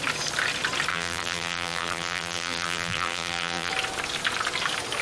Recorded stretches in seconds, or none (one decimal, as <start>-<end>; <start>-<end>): 0.0-0.9; 3.7-5.0